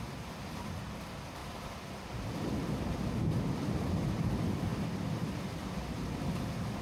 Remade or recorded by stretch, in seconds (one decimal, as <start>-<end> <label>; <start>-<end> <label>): 0.0-1.4 recorded; 1.4-2.6 remade; 2.6-6.8 recorded